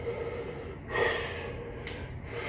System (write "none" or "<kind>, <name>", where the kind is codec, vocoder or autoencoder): none